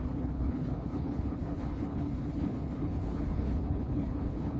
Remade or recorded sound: remade